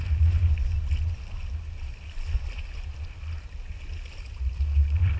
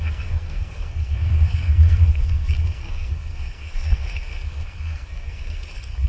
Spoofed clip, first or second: second